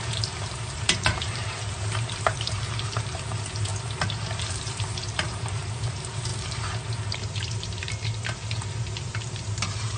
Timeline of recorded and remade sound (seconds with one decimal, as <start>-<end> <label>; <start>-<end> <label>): 0.0-3.7 remade; 3.7-4.4 recorded; 4.4-6.3 remade; 6.3-7.2 recorded; 7.2-10.0 remade

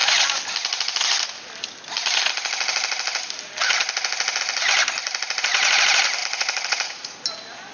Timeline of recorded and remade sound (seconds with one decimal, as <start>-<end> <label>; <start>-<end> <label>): 0.0-6.2 recorded; 6.2-7.2 remade; 7.2-7.7 recorded

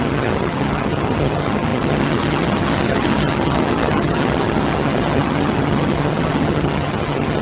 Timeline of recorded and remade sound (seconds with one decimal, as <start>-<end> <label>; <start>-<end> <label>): 0.0-7.4 remade